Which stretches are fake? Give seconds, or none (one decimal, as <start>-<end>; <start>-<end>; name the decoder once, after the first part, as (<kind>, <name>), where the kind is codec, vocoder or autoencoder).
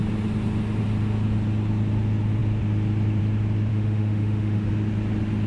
3.7-4.7 (autoencoder, DAC-VAE)